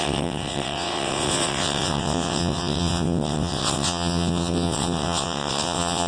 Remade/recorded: remade